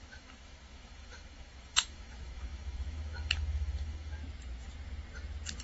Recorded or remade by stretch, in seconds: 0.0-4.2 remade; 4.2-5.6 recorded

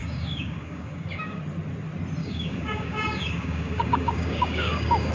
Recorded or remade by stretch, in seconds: 0.0-1.4 remade; 1.4-2.2 recorded; 2.2-5.1 remade